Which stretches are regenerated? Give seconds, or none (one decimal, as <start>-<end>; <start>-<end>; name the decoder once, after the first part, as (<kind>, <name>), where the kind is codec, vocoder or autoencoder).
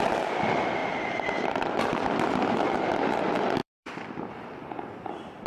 3.6-4.3 (vocoder, BigVGAN v2)